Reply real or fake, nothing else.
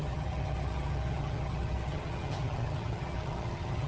fake